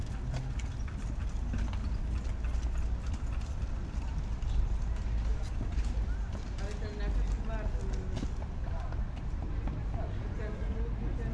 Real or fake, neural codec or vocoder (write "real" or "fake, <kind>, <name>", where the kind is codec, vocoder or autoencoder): real